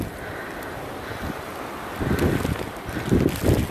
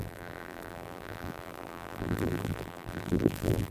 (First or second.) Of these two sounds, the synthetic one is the second